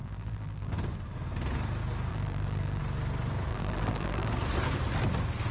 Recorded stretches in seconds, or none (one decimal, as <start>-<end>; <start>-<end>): 0.7-2.1; 2.8-3.5; 4.3-5.5